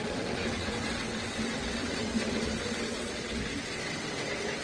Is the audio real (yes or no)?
no